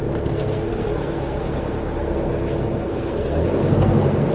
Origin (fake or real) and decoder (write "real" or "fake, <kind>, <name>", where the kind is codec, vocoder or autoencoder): fake, codec, SNAC